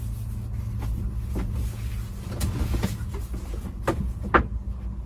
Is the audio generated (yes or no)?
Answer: no